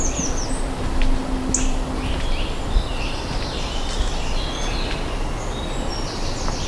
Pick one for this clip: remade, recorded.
recorded